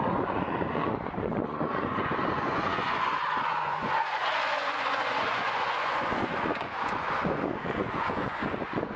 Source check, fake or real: fake